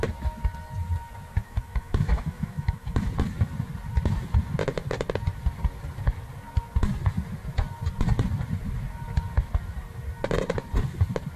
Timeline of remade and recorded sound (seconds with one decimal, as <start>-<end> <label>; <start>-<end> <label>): 0.0-1.4 recorded; 1.4-3.1 remade; 3.1-11.4 recorded